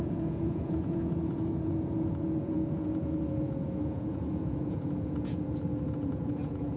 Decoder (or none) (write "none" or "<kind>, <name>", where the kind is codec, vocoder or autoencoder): vocoder, Vocos